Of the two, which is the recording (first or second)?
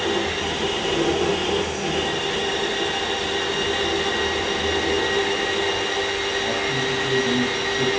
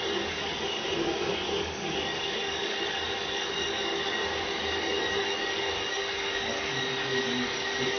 first